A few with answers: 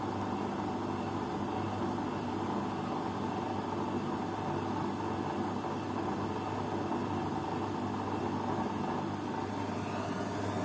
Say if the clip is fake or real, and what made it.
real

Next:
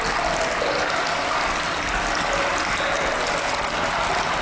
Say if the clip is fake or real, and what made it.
real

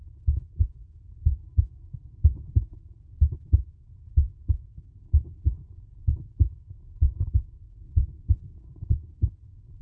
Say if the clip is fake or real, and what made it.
real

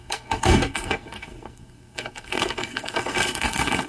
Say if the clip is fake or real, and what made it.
fake, codec, SNAC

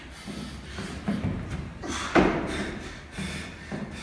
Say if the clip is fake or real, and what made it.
real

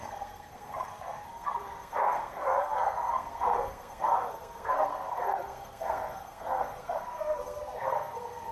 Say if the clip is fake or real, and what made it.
fake, codec, SNAC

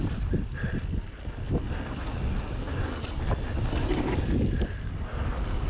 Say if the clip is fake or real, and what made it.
real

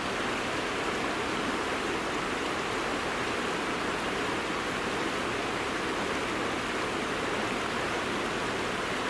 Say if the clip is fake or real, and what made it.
real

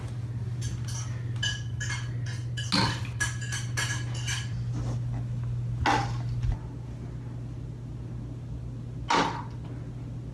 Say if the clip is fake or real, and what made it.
real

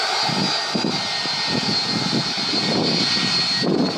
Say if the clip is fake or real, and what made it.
real